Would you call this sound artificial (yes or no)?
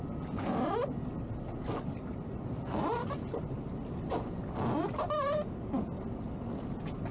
no